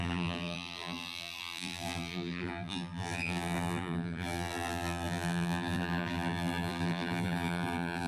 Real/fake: fake